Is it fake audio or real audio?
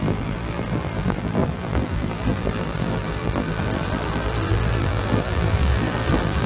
fake